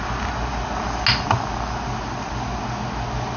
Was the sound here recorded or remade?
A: recorded